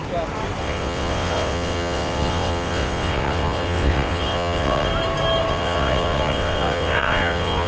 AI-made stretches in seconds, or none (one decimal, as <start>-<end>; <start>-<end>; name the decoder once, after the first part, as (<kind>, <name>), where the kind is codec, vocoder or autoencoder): 0.6-4.9 (vocoder, WaveNeXt); 5.5-7.7